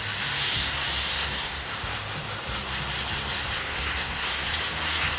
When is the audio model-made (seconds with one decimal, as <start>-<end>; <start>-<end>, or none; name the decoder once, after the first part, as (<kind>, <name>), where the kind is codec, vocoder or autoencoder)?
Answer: 1.0-1.7 (codec, SNAC); 3.6-4.5